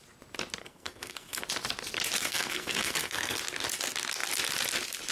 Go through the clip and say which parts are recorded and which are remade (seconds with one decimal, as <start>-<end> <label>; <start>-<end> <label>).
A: 0.0-0.6 recorded; 0.6-1.4 remade; 1.4-2.2 recorded; 2.2-3.4 remade; 3.4-5.1 recorded